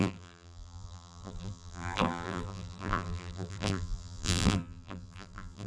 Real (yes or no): no